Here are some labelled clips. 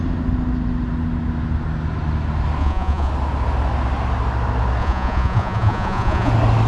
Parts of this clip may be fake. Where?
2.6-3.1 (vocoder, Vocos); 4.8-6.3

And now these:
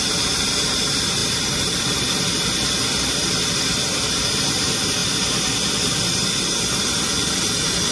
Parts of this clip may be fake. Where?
0.0-5.0 (vocoder, BigVGAN v2)

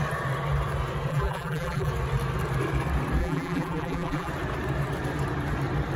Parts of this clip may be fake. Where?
1.1-1.9 (vocoder, BigVGAN v2); 3.2-4.3

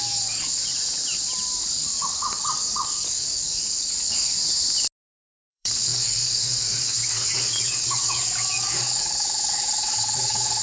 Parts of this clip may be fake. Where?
0.0-0.6 (codec, DAC); 1.6-4.4; 5.5-10.6

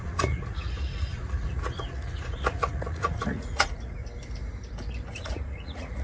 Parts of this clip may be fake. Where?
0.0-4.0 (vocoder, Vocos); 5.2-6.0

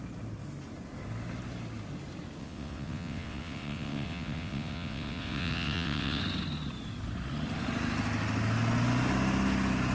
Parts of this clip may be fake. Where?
2.4-6.2 (vocoder, WaveNeXt)

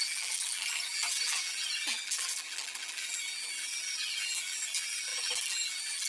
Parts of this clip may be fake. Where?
0.0-6.1 (vocoder, BigVGAN v2)

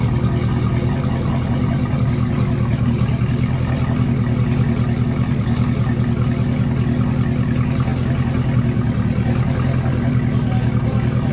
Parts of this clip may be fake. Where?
none